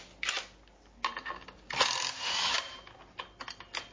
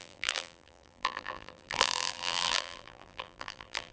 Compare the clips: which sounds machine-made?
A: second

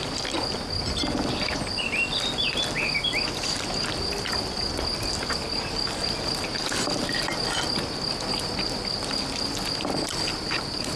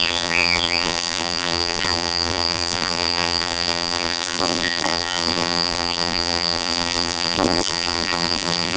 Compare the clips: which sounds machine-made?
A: second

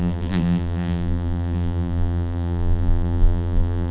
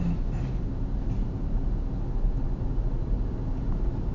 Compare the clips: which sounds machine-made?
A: first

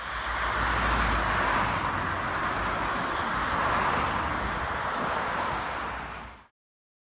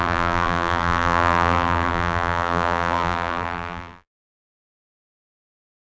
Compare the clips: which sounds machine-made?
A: second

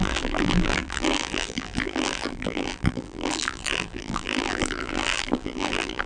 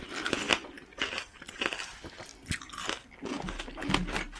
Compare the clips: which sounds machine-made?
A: first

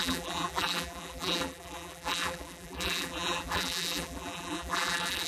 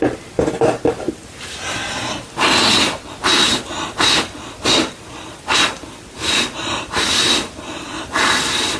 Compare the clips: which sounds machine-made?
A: first